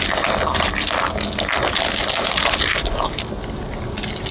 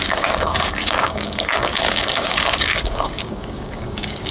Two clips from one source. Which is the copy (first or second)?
second